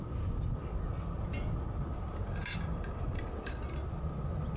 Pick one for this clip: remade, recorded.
recorded